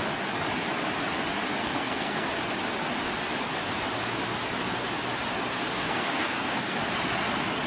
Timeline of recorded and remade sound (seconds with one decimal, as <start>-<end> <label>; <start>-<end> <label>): 0.0-1.6 recorded; 1.6-2.3 remade; 2.3-5.8 recorded; 5.8-6.8 remade; 6.8-7.7 recorded